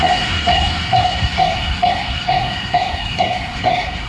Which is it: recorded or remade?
remade